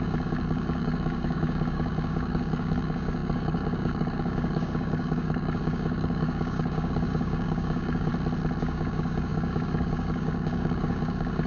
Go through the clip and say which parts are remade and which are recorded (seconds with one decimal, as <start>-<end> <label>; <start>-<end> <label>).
0.0-8.1 remade; 8.1-8.6 recorded; 8.6-11.5 remade